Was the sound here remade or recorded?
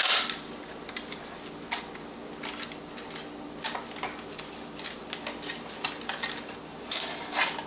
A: recorded